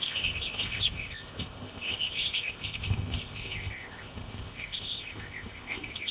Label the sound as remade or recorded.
remade